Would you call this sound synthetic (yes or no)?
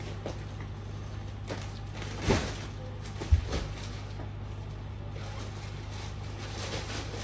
no